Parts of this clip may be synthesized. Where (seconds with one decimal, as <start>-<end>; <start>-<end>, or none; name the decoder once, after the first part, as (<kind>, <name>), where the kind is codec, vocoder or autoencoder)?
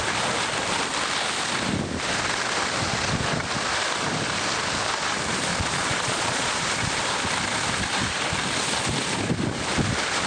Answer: 5.5-6.6 (vocoder, Vocos)